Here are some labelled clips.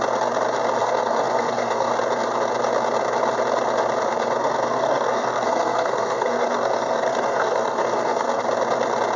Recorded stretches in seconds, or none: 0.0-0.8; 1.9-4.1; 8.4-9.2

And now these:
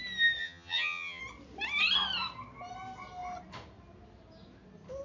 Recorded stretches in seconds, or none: 0.0-0.4; 1.2-5.0

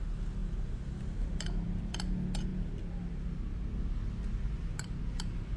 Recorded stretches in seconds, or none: 0.0-5.6

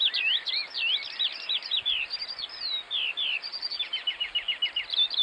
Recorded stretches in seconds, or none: 0.0-3.5; 4.4-5.2